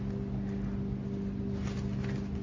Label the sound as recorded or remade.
recorded